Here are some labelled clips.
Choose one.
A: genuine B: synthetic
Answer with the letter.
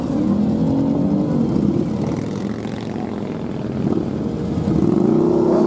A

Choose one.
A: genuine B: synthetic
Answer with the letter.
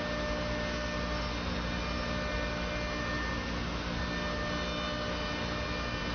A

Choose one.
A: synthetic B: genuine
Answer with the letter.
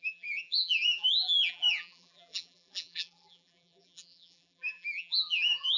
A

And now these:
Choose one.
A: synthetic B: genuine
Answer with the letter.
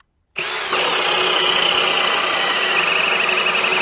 B